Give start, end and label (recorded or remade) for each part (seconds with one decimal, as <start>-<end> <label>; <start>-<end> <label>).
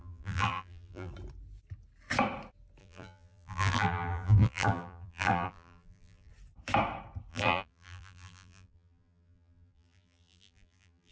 0.0-1.1 remade; 1.1-2.8 recorded; 2.8-6.3 remade; 6.3-7.3 recorded; 7.3-11.1 remade